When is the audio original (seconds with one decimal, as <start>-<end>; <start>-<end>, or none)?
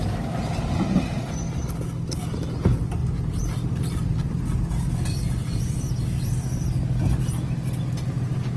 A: 0.0-8.6